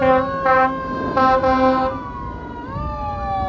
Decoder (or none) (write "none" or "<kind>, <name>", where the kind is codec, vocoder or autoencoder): none